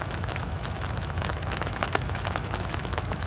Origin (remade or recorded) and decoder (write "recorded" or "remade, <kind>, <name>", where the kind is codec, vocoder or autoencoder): remade, autoencoder, DAC-VAE